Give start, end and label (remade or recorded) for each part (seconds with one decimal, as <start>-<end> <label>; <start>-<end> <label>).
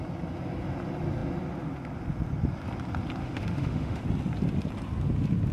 0.0-3.2 recorded; 3.2-4.0 remade; 4.0-5.5 recorded